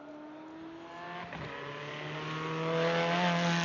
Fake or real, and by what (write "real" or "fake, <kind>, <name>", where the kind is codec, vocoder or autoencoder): real